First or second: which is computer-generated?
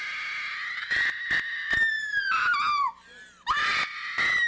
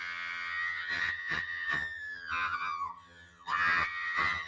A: second